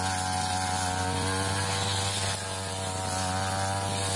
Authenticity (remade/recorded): recorded